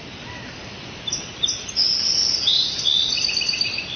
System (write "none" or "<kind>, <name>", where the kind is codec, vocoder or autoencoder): vocoder, BigVGAN v2